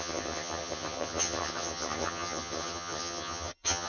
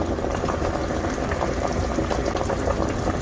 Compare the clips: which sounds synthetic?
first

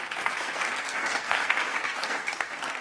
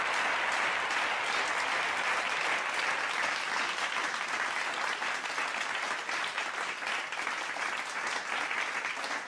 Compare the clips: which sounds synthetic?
first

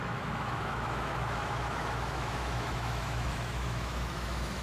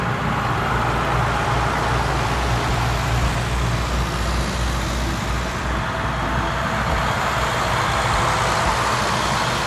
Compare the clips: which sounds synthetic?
first